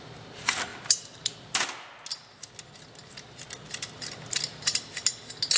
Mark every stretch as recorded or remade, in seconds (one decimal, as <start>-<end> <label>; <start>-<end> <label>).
0.0-5.6 recorded